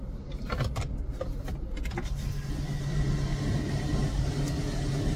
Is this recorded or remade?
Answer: recorded